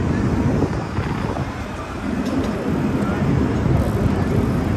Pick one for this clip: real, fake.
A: real